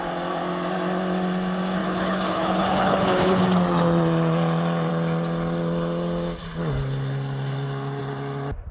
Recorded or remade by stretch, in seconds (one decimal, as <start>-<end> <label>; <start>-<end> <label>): 0.0-1.8 recorded; 1.8-3.4 remade; 3.4-8.7 recorded